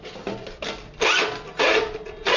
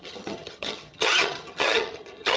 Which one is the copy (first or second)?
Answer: second